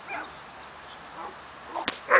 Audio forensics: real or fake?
real